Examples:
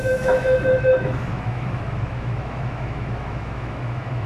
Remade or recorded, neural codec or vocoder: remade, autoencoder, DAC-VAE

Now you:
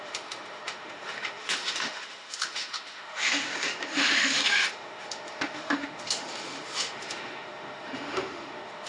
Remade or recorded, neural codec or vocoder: remade, autoencoder, DAC-VAE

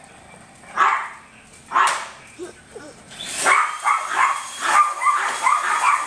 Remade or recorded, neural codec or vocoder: recorded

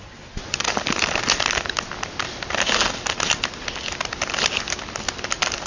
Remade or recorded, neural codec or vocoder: recorded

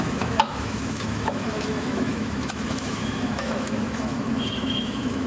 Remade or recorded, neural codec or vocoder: remade, autoencoder, DAC-VAE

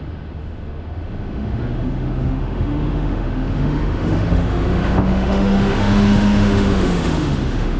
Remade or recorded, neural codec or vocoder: remade, autoencoder, DAC-VAE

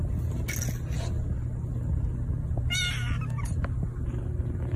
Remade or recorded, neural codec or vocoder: recorded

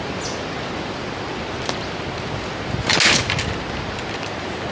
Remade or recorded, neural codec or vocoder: recorded